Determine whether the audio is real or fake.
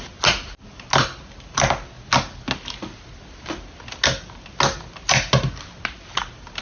real